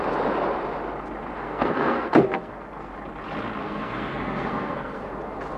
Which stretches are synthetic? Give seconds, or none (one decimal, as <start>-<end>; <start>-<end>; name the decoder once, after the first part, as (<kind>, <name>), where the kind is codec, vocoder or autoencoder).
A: 1.3-2.9 (codec, SNAC); 3.6-5.1